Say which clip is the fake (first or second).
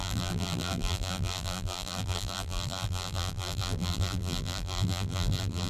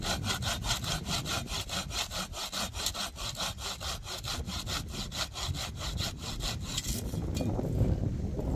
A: first